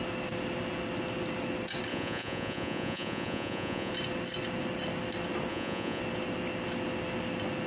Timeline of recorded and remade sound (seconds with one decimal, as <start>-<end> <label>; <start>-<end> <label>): 0.0-1.9 recorded; 1.9-3.9 remade; 3.9-5.5 recorded; 5.5-6.0 remade; 6.0-7.7 recorded